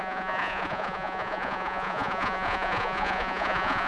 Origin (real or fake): fake